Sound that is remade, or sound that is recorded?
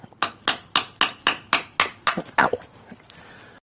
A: recorded